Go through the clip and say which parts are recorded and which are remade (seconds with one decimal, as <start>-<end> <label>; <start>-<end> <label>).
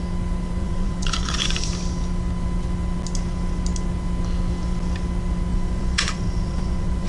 0.0-0.6 recorded; 0.6-1.7 remade; 1.7-5.5 recorded; 5.5-7.1 remade